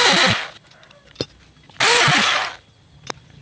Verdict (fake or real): real